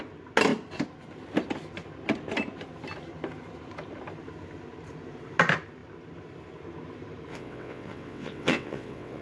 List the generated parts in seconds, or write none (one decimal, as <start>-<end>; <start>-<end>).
7.3-9.2